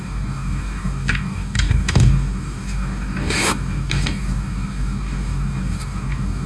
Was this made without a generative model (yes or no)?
no